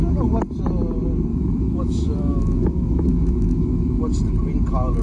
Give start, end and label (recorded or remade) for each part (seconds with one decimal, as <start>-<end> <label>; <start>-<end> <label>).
0.0-1.3 recorded; 1.3-4.0 remade; 4.0-5.0 recorded